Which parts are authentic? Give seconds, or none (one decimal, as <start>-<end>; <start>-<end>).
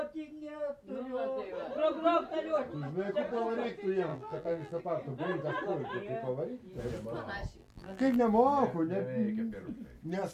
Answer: 0.0-4.1; 4.8-7.6; 8.2-10.3